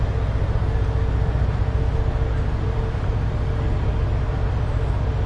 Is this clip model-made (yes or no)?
no